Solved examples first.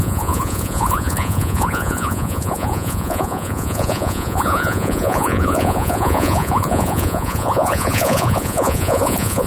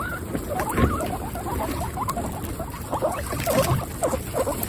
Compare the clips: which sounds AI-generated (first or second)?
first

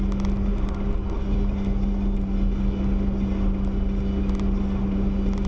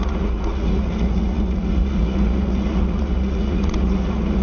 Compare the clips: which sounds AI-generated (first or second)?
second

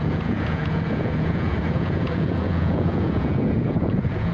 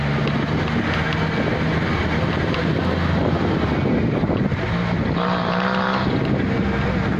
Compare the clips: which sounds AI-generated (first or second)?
first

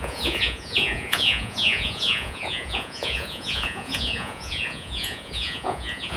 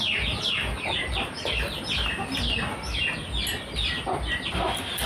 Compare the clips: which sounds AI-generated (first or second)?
first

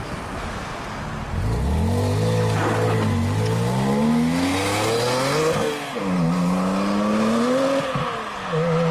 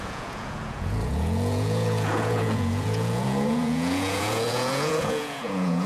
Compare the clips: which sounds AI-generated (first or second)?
second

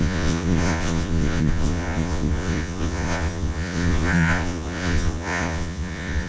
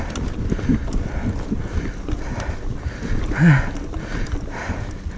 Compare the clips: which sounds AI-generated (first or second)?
first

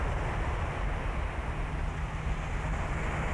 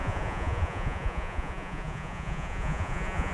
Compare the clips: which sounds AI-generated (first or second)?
second